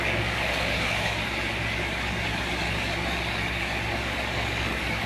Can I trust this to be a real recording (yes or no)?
no